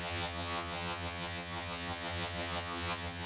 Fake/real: fake